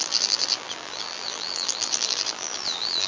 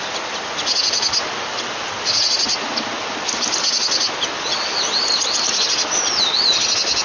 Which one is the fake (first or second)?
first